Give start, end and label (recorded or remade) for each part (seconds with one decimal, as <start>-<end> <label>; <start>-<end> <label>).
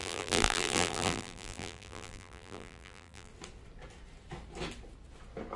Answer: 0.0-3.3 remade; 3.3-5.6 recorded